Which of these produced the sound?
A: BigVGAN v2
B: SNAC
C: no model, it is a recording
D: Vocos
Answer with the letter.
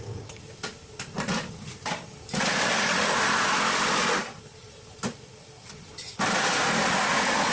A